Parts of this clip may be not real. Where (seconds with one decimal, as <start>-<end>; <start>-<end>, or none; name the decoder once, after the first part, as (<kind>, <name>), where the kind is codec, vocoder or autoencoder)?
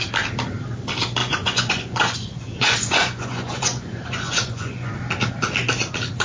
1.2-4.9 (vocoder, Vocos)